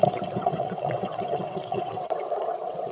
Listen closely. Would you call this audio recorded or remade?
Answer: remade